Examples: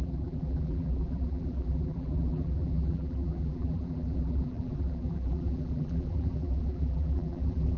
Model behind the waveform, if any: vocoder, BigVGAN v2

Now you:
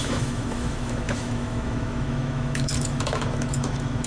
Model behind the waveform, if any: autoencoder, DAC-VAE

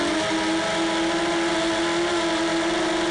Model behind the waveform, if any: none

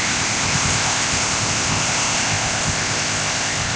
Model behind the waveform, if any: codec, ZipCodec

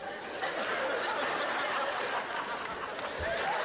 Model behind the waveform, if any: none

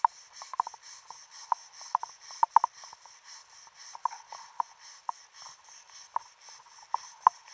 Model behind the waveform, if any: none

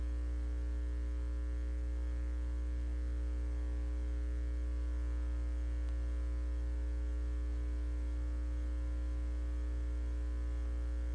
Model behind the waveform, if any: none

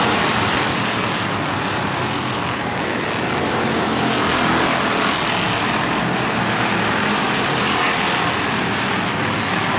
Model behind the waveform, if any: none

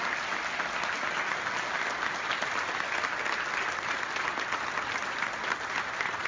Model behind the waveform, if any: none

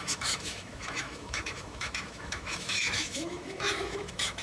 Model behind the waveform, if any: autoencoder, DAC-VAE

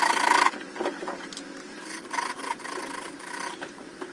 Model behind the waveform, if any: none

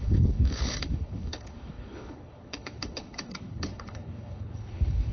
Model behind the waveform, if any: codec, HILCodec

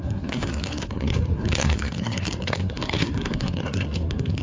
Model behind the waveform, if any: codec, SNAC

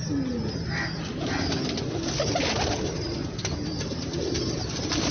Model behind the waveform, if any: none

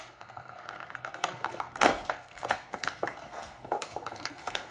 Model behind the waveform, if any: codec, SNAC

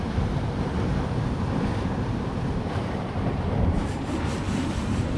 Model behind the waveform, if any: vocoder, BigVGAN v2